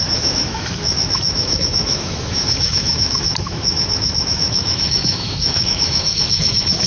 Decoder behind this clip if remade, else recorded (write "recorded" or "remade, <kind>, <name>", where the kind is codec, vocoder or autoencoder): remade, autoencoder, DAC-VAE